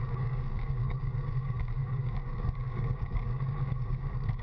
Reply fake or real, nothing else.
fake